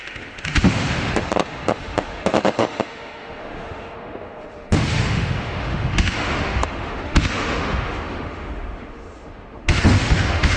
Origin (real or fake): fake